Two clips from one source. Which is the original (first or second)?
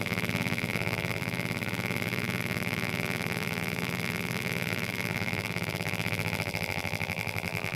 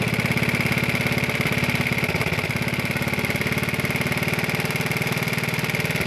second